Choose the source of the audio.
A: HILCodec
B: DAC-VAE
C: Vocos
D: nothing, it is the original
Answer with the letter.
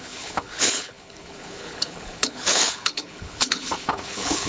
A